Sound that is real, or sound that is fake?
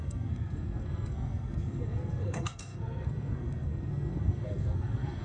fake